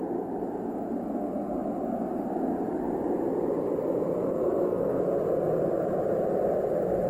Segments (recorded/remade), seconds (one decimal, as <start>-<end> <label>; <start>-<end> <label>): 0.0-4.3 recorded; 4.3-5.0 remade; 5.0-7.1 recorded